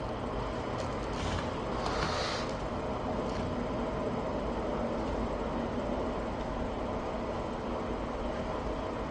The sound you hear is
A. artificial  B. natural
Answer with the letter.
B